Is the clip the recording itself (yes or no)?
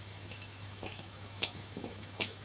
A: no